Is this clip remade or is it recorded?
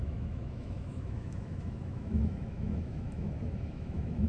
remade